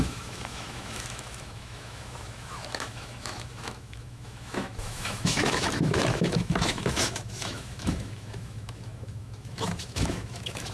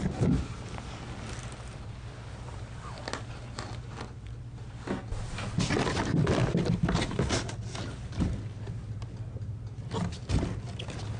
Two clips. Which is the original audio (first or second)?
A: second